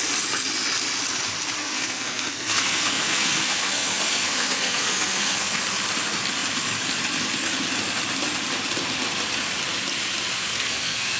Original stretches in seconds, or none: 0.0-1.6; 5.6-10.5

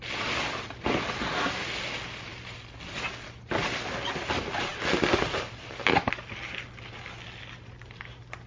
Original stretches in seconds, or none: 0.0-8.5

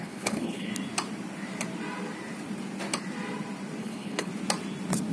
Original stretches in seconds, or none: 0.7-3.8; 4.3-5.1

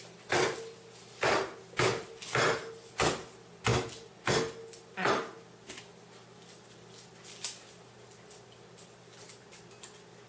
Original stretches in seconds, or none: 0.0-10.3

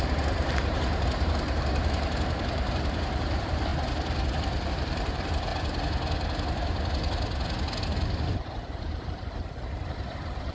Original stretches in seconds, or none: 3.7-4.7; 5.5-7.8

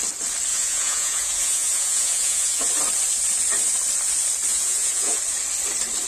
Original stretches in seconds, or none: 0.0-0.5; 2.7-4.5; 5.2-6.1